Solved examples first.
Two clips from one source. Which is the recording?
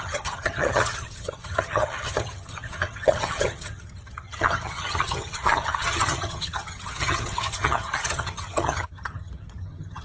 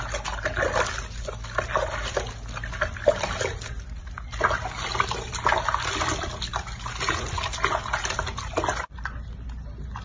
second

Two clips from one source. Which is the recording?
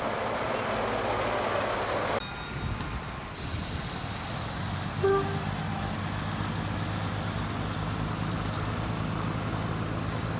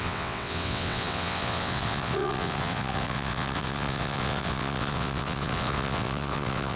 first